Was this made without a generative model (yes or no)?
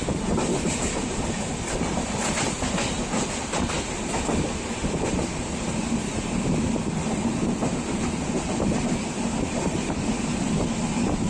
yes